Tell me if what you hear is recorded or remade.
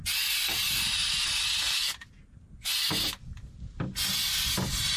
recorded